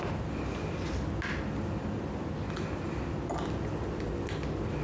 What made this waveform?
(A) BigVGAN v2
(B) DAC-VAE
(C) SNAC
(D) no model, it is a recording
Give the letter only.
D